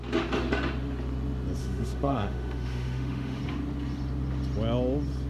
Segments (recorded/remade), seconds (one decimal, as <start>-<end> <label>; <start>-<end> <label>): 0.0-1.6 recorded; 1.6-3.4 remade; 3.4-5.3 recorded